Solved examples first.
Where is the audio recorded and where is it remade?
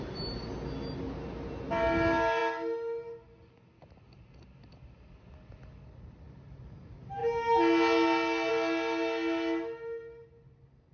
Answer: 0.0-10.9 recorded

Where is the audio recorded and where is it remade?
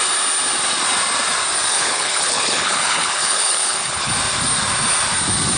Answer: 0.0-1.7 recorded; 1.7-4.1 remade; 4.1-5.6 recorded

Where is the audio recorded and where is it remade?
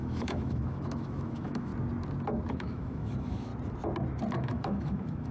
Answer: 0.0-1.7 remade; 1.7-2.5 recorded; 2.5-3.5 remade; 3.5-4.3 recorded; 4.3-5.3 remade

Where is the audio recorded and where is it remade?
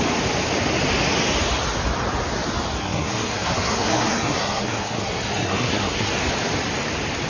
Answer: 0.0-2.8 recorded; 2.8-6.1 remade; 6.1-7.3 recorded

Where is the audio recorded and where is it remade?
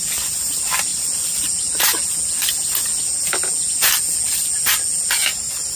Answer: 0.0-5.8 recorded